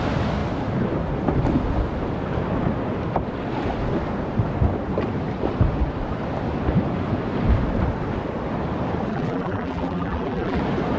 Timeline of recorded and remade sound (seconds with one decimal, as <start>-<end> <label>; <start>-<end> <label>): 0.0-9.1 recorded; 9.1-10.6 remade; 10.6-11.0 recorded